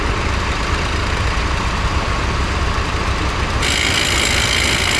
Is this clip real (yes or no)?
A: yes